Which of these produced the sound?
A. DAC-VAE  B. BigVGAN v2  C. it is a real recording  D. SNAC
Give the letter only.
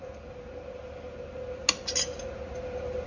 C